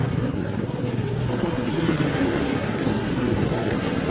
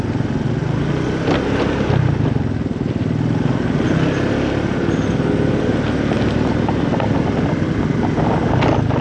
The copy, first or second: first